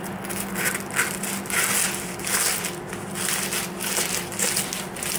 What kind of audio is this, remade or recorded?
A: recorded